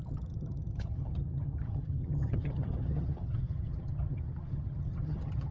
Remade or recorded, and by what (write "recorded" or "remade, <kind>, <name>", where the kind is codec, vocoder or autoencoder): remade, vocoder, HiFi-GAN